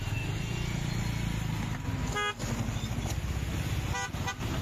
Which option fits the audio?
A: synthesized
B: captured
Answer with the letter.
B